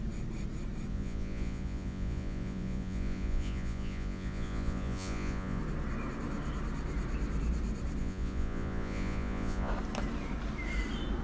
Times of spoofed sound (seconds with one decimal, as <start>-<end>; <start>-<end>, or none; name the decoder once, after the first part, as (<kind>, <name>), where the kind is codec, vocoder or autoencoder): 0.9-5.6 (vocoder, Vocos); 8.0-9.7